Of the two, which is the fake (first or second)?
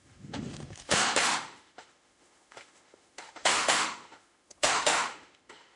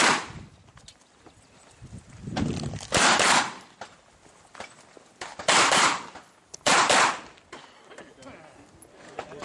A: first